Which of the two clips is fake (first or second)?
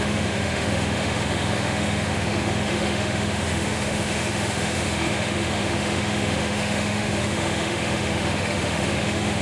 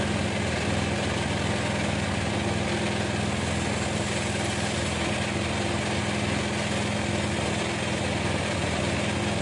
first